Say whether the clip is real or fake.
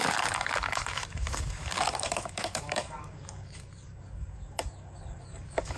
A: fake